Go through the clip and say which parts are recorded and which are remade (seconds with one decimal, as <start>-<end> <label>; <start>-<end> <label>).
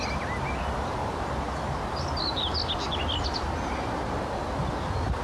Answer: 0.0-5.2 recorded